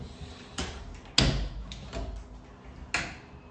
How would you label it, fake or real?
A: real